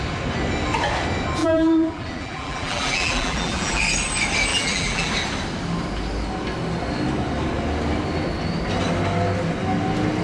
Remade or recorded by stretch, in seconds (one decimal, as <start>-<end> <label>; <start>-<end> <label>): 0.0-1.4 recorded; 1.4-3.8 remade; 3.8-4.5 recorded; 4.5-5.1 remade; 5.1-10.2 recorded